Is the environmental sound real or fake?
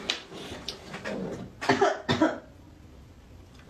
real